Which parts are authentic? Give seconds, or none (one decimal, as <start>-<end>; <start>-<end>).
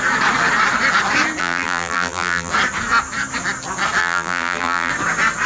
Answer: 0.0-1.4; 2.5-4.0; 4.9-5.5